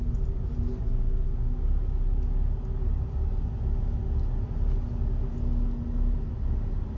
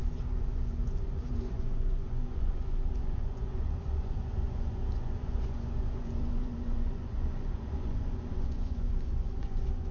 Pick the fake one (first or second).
second